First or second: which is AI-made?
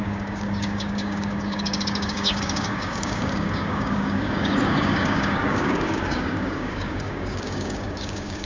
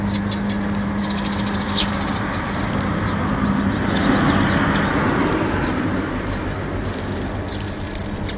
first